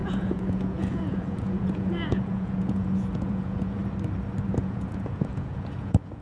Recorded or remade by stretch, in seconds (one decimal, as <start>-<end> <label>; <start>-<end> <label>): 0.0-3.8 remade; 3.8-4.6 recorded; 4.6-6.2 remade